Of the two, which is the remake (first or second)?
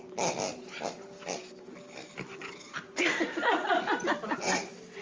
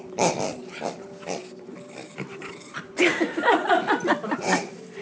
second